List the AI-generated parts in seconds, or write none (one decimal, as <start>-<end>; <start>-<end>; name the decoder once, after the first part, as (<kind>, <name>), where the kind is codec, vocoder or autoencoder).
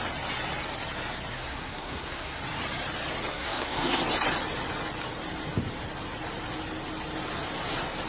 1.3-2.4 (codec, SNAC); 3.3-4.0